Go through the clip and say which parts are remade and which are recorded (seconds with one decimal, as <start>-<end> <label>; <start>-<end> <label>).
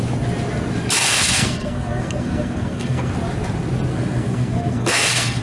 0.0-1.0 recorded; 1.0-3.1 remade; 3.1-3.9 recorded; 3.9-5.4 remade